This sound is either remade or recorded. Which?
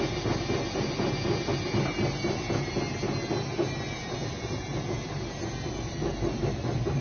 recorded